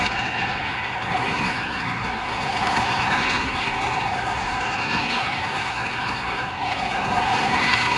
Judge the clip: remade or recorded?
remade